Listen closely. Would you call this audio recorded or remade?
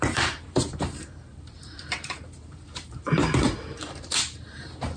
remade